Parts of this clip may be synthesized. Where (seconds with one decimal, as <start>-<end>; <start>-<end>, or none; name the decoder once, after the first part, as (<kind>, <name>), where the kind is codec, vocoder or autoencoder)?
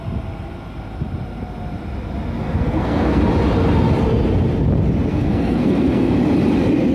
2.4-3.2 (codec, SNAC); 5.1-6.1